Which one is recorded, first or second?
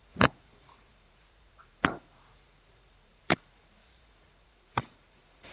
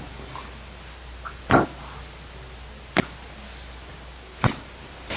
second